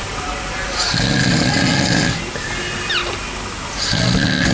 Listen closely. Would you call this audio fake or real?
real